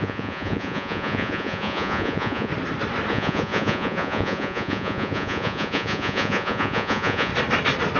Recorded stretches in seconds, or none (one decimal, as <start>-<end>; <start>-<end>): 2.5-3.1; 7.3-8.0